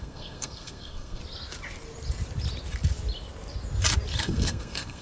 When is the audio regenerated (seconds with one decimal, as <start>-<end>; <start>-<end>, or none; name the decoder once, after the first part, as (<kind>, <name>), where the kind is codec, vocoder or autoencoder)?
0.0-1.2 (codec, SNAC); 4.2-5.0